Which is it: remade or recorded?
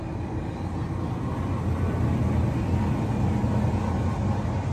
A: recorded